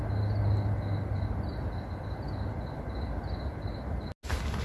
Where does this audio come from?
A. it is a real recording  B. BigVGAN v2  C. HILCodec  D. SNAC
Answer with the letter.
A